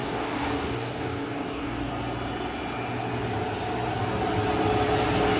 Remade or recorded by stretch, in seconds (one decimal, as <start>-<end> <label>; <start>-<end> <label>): 0.0-1.9 remade; 1.9-5.4 recorded